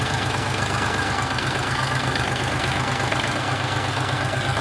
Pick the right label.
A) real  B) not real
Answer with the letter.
B